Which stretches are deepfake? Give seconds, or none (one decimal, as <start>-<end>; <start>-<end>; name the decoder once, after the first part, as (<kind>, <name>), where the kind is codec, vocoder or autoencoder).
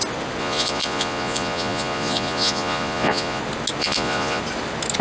0.4-3.4 (vocoder, Vocos); 3.8-4.4